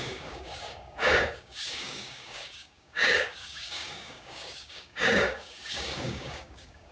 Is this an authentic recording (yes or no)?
no